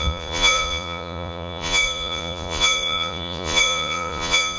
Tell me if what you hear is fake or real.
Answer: fake